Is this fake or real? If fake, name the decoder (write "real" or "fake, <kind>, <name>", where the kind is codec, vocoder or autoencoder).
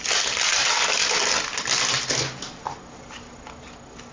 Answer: real